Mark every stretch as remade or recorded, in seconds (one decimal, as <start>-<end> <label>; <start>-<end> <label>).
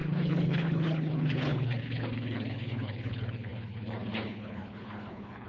0.0-5.5 remade